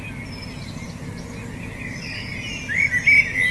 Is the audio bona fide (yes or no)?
yes